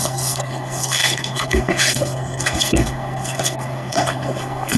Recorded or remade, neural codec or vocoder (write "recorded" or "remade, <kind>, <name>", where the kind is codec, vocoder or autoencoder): remade, codec, SNAC